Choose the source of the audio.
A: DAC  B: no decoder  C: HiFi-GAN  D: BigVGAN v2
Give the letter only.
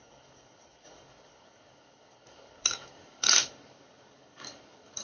A